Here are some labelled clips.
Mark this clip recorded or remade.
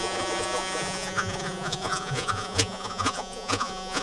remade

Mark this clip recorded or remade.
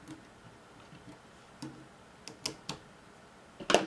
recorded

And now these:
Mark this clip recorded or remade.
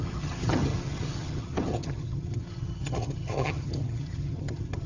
remade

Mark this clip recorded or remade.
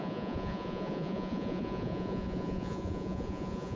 remade